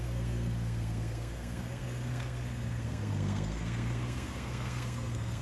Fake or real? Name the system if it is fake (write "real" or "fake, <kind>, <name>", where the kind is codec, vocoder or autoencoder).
fake, codec, SNAC